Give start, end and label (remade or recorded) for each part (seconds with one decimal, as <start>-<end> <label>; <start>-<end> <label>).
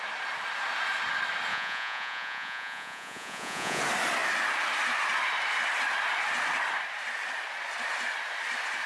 0.0-1.5 recorded; 1.5-3.8 remade; 3.8-8.9 recorded